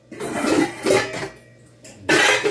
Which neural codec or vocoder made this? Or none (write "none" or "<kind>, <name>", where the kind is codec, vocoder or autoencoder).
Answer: none